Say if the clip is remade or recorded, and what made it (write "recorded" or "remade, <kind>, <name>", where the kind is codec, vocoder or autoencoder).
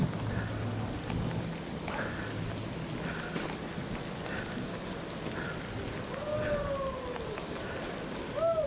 recorded